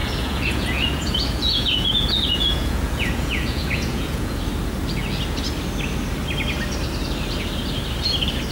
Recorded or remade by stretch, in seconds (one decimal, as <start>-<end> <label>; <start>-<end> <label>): 0.0-4.4 remade; 4.4-8.5 recorded